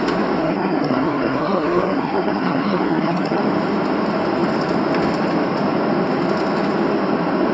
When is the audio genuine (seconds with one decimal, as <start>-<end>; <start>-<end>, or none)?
0.0-0.4; 3.4-7.5